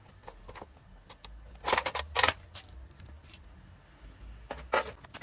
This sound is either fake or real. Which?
real